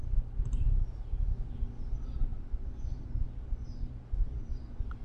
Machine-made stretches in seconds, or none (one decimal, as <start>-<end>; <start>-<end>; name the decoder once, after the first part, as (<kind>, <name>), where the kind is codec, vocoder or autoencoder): 2.3-4.6 (vocoder, BigVGAN v2)